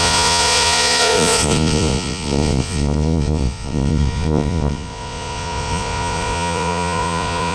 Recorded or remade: remade